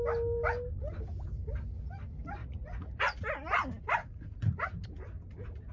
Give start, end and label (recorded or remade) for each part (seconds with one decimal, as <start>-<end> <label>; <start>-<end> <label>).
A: 0.0-2.4 recorded; 2.4-3.2 remade; 3.2-4.0 recorded; 4.0-4.6 remade; 4.6-5.7 recorded